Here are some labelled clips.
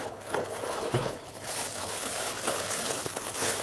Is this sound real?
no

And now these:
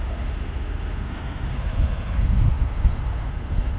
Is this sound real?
no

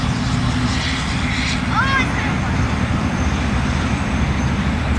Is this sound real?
yes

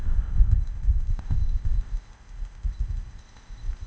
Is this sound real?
no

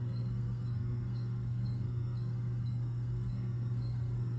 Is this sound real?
no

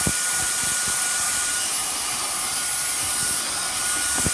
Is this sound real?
yes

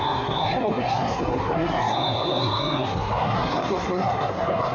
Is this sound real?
no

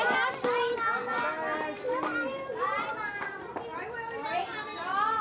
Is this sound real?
yes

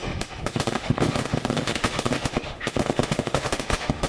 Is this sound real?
no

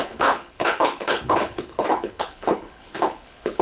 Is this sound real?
no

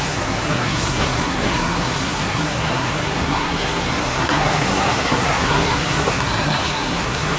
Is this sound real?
no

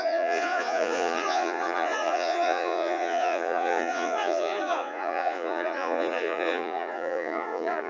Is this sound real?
no